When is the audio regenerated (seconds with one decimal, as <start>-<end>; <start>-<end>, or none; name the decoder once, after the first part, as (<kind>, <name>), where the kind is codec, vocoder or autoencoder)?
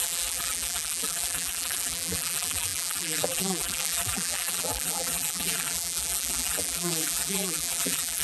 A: 0.0-8.2 (vocoder, BigVGAN v2)